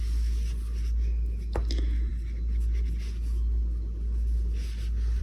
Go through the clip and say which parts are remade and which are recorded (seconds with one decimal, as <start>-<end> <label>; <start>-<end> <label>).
0.0-5.2 recorded

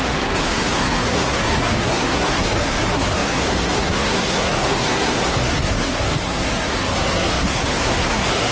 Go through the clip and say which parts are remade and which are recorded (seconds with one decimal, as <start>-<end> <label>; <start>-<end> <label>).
0.0-8.5 remade

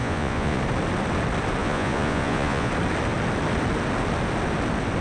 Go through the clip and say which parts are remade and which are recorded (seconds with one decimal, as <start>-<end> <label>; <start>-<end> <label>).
0.0-0.6 remade; 0.6-1.6 recorded; 1.6-2.7 remade; 2.7-5.0 recorded

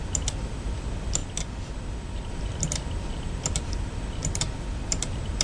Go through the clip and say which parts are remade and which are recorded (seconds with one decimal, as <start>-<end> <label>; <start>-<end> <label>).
0.0-5.4 recorded